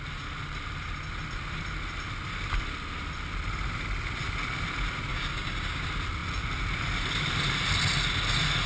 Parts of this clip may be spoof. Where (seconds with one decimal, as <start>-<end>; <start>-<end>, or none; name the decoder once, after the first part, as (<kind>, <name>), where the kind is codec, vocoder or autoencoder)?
5.1-5.8 (codec, DAC)